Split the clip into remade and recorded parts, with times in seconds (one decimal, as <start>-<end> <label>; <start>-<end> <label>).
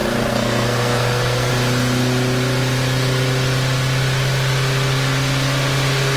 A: 0.0-1.5 remade; 1.5-6.2 recorded